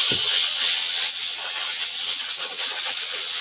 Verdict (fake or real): fake